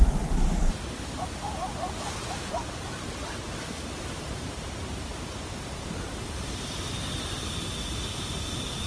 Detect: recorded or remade recorded